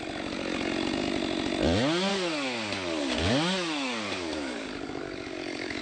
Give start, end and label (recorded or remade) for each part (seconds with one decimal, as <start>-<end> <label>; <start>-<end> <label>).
0.0-2.1 recorded; 2.1-5.8 remade